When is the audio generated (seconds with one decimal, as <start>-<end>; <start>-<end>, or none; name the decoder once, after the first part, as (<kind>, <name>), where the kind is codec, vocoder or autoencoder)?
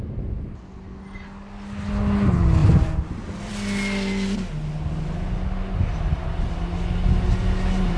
2.6-3.5 (vocoder, BigVGAN v2)